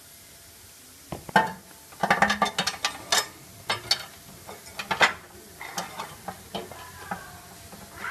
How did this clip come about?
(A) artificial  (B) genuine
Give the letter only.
B